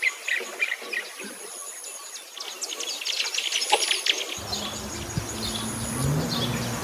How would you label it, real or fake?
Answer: real